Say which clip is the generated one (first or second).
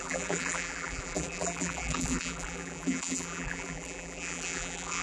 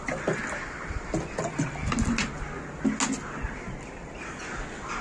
first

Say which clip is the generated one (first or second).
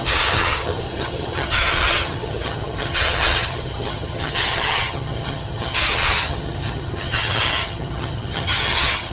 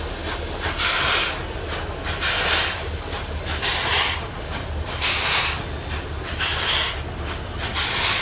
first